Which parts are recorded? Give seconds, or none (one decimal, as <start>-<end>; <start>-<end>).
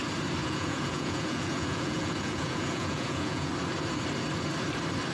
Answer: 0.0-0.4; 3.5-5.1